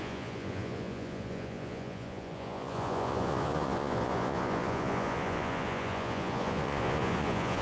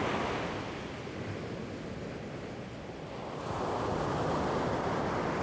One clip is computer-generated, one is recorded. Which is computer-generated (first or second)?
first